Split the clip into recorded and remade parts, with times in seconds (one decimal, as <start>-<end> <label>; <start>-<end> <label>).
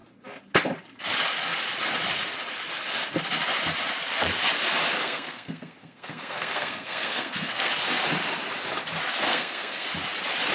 0.0-5.0 recorded; 5.0-7.7 remade; 7.7-9.3 recorded; 9.3-9.9 remade; 9.9-10.5 recorded